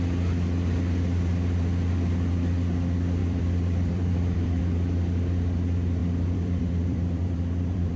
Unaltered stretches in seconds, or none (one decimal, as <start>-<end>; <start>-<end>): 0.0-3.2; 4.6-6.0